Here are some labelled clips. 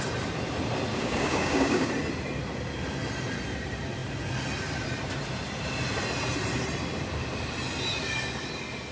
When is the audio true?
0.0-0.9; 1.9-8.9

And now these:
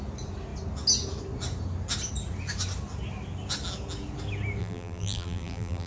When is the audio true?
0.0-4.6

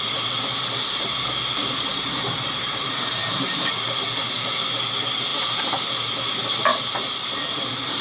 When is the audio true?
0.0-1.6; 3.7-6.7

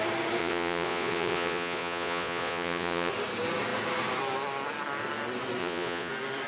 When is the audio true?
0.0-0.4; 3.1-5.6; 6.1-6.5

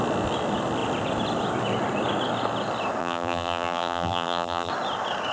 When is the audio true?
0.0-3.0; 4.7-5.3

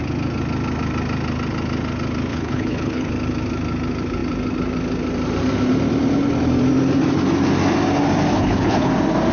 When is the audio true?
0.0-2.3; 3.1-8.3; 8.9-9.3